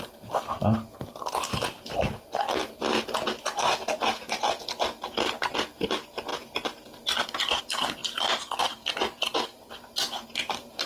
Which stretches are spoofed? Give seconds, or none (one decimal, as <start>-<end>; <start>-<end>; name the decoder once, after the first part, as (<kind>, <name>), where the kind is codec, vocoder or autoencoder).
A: none